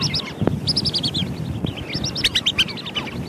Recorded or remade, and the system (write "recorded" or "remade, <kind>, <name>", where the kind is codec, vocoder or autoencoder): recorded